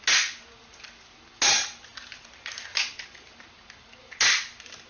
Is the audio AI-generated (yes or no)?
no